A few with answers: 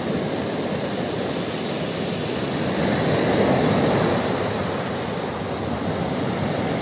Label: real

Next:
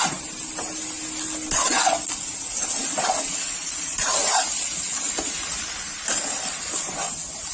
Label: real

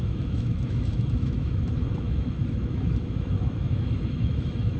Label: fake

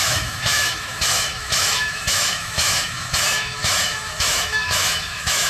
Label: fake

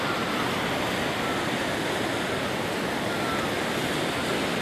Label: real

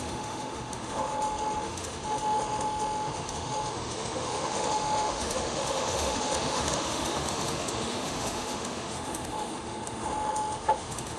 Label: fake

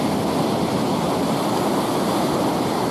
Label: real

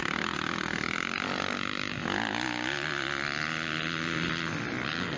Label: real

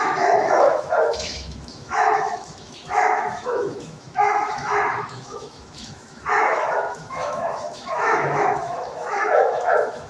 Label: fake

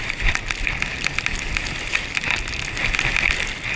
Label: real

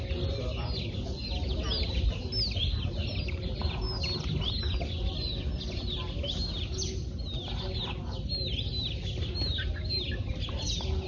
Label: real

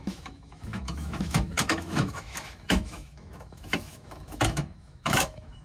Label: fake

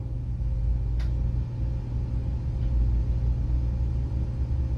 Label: real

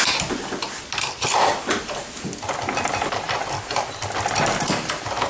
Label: real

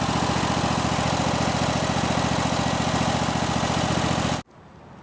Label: real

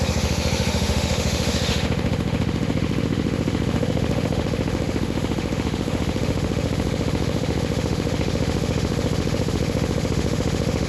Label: fake